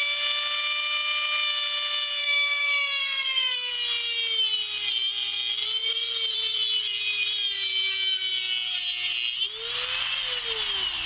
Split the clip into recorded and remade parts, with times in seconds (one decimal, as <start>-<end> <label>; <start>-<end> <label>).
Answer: 0.0-2.2 recorded; 2.2-3.7 remade; 3.7-11.1 recorded